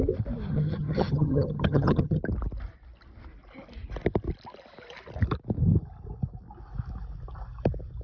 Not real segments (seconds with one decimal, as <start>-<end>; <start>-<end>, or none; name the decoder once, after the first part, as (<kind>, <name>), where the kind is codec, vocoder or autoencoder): 0.5-2.2 (vocoder, HiFi-GAN)